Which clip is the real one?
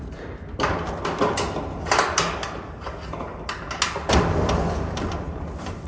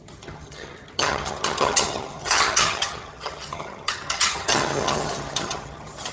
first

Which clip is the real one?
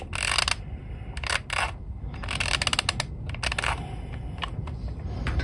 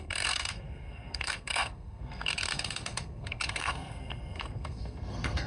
first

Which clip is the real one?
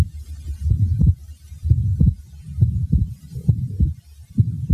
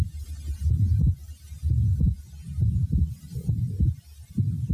second